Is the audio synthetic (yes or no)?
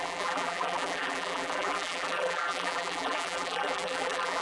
yes